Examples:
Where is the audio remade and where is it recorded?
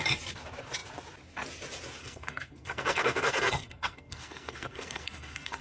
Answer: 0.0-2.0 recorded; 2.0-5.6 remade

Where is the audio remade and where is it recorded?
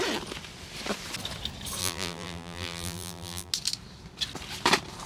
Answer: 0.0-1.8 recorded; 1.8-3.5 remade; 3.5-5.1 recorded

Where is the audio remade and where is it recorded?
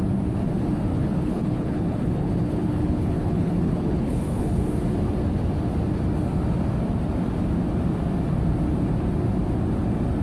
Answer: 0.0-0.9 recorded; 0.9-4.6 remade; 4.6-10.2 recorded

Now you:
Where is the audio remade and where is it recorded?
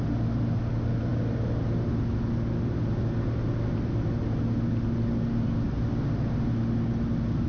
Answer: 0.0-7.5 recorded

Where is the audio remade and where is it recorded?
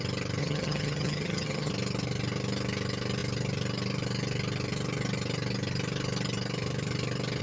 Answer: 0.0-0.4 recorded; 0.4-1.7 remade; 1.7-7.4 recorded